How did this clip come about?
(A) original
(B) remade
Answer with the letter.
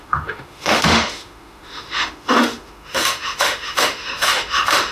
B